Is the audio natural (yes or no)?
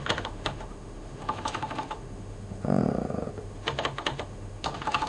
no